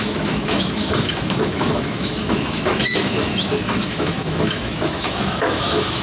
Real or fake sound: fake